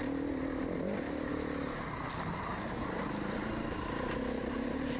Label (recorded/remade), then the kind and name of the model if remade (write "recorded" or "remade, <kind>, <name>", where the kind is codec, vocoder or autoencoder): recorded